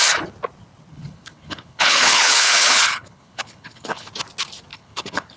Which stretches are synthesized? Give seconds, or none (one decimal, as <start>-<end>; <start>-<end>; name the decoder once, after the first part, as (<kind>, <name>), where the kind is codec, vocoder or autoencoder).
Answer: 0.9-4.1 (codec, HILCodec); 4.7-5.4